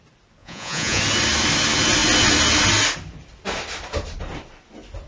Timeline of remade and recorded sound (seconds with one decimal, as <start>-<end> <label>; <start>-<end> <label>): 0.0-0.4 recorded; 0.4-1.0 remade; 1.0-5.1 recorded